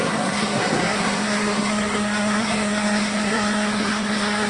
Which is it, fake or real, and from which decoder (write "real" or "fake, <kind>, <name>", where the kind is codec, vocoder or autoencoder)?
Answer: fake, codec, SNAC